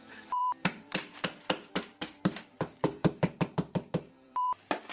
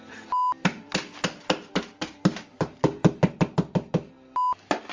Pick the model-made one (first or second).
first